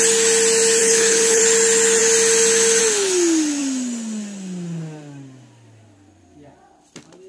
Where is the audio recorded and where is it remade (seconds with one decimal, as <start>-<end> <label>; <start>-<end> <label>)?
0.0-0.8 recorded; 0.8-1.4 remade; 1.4-7.3 recorded